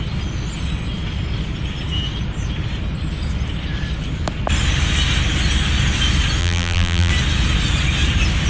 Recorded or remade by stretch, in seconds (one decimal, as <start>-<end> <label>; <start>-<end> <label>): 0.0-6.4 recorded; 6.4-7.1 remade; 7.1-8.5 recorded

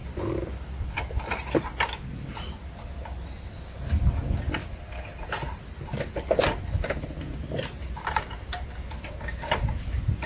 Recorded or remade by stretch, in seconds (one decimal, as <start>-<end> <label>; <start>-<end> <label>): 0.0-4.6 recorded; 4.6-5.6 remade; 5.6-10.3 recorded

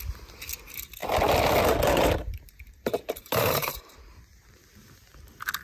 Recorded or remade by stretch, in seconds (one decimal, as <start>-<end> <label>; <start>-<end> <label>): 0.0-2.2 recorded; 2.2-3.9 remade; 3.9-5.6 recorded

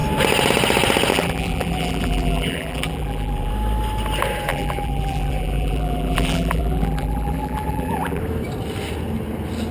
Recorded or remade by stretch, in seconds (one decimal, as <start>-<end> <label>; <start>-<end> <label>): 0.0-1.1 recorded; 1.1-3.5 remade; 3.5-4.5 recorded; 4.5-8.2 remade; 8.2-9.7 recorded

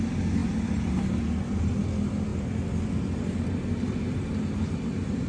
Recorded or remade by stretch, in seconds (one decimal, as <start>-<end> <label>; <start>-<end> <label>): 0.0-2.3 recorded; 2.3-3.2 remade; 3.2-5.3 recorded

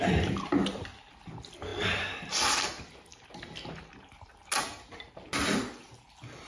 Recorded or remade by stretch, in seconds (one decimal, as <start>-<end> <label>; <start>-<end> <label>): 0.0-6.5 recorded